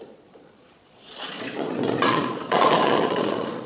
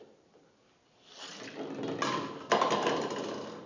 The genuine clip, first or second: second